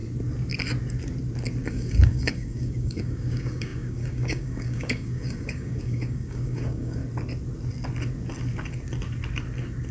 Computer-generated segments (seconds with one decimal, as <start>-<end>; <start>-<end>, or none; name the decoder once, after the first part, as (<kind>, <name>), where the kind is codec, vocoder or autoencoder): 1.7-7.0 (codec, DAC)